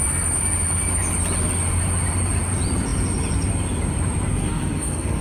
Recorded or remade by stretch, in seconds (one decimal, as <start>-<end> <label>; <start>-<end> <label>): 0.0-4.3 recorded; 4.3-5.2 remade

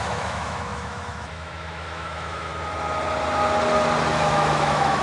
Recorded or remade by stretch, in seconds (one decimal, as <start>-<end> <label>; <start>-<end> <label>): 0.0-2.5 remade; 2.5-4.1 recorded; 4.1-5.0 remade

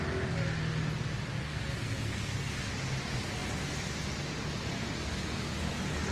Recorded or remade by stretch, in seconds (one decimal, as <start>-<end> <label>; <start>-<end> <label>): 0.0-1.4 recorded; 1.4-2.7 remade; 2.7-6.1 recorded

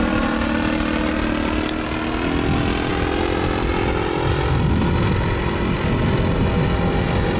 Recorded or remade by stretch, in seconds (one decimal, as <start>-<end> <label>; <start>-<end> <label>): 0.0-7.4 recorded

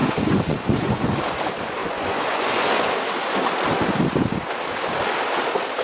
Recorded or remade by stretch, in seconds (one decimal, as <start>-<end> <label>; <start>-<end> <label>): 0.0-1.2 remade; 1.2-1.8 recorded; 1.8-2.9 remade; 2.9-5.8 recorded